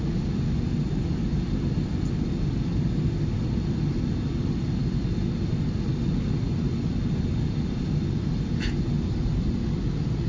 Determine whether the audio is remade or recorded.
recorded